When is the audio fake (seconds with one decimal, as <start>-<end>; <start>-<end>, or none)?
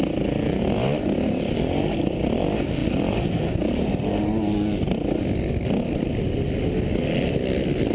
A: 2.8-3.6